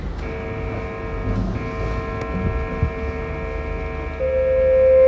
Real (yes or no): yes